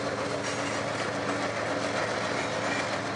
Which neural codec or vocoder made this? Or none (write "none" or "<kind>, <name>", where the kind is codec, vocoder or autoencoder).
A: none